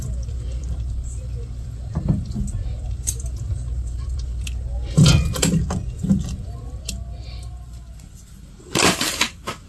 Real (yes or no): no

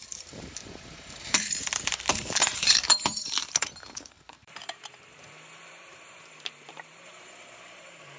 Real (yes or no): no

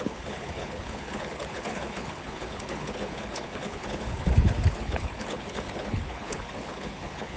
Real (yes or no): no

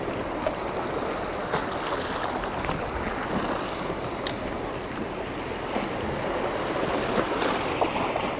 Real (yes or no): yes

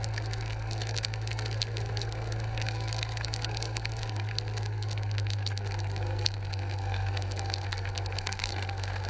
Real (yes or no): no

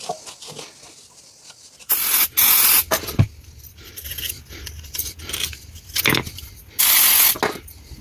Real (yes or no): yes